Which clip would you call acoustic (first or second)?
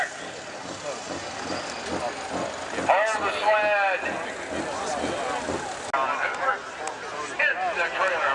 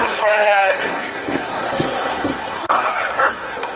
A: first